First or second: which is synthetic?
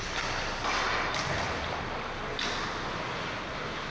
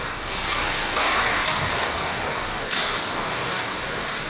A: second